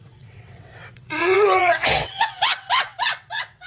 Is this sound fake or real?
fake